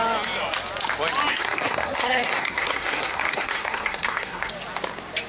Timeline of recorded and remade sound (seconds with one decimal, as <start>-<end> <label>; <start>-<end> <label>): 0.0-1.3 recorded; 1.3-4.5 remade; 4.5-5.3 recorded